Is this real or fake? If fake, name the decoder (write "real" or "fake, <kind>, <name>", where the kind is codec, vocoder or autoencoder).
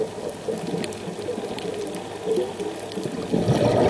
real